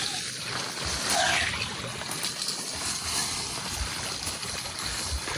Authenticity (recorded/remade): recorded